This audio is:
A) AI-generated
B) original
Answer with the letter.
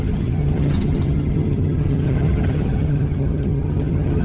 A